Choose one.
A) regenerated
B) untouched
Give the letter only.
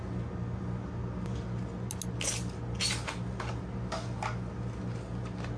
B